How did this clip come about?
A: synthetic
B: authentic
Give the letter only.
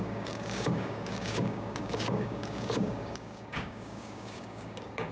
A